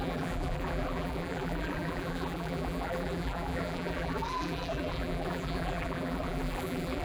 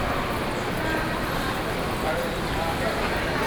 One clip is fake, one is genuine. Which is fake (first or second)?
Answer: first